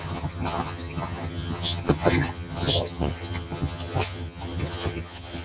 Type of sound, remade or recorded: remade